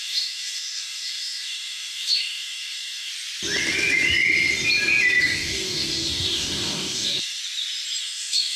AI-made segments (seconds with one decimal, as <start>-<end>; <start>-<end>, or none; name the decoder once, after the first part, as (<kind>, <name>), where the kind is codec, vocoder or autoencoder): 0.0-3.1 (codec, DAC); 5.2-7.4; 8.0-8.6